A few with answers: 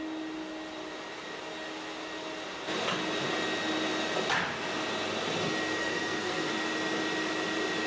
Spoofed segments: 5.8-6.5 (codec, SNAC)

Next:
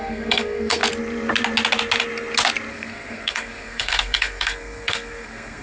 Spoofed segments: 0.0-0.8 (codec, SNAC); 2.7-5.6

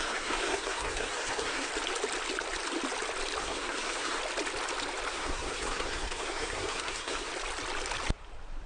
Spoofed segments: 0.0-1.7 (codec, SNAC); 3.4-4.2; 5.1-7.3

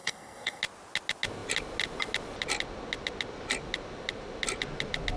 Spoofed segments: 0.0-0.6 (codec, SNAC)

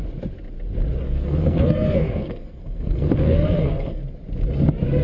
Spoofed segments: 1.0-4.0 (codec, SNAC)

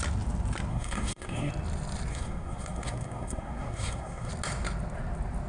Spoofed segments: 0.7-1.5 (codec, SNAC); 2.1-4.3